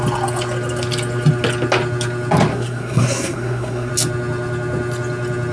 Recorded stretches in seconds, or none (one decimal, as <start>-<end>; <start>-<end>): 0.0-2.5; 3.9-5.5